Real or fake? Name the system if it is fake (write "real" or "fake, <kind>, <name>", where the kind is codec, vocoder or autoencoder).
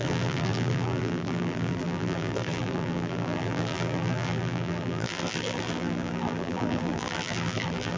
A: fake, vocoder, BigVGAN v2